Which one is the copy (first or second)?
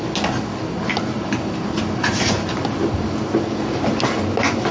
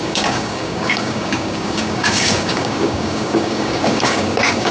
second